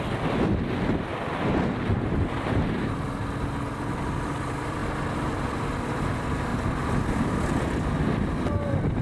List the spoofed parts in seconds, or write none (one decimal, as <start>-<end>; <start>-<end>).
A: none

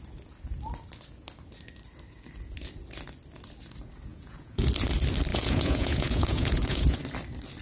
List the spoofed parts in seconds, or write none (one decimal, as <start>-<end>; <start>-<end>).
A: 4.1-4.7; 5.3-7.0

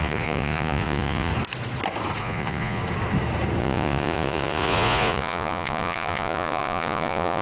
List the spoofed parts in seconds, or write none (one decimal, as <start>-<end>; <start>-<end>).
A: 0.0-1.3; 2.2-2.8; 3.6-7.4